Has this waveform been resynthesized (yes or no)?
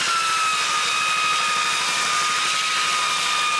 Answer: no